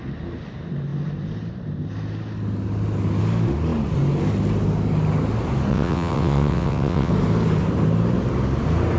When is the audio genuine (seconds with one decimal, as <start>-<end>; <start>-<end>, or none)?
0.0-5.7; 7.1-9.0